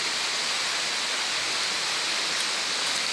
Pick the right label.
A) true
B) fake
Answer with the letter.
A